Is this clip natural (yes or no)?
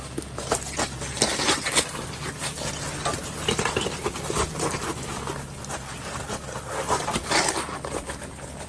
yes